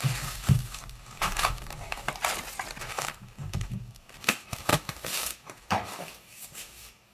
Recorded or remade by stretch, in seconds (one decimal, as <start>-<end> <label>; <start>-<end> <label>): 0.0-2.1 remade; 2.1-2.8 recorded; 2.8-7.1 remade